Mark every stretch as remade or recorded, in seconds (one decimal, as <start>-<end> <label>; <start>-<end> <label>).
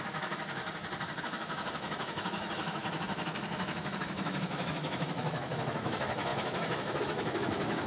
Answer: 0.0-0.6 remade; 0.6-1.2 recorded; 1.2-7.9 remade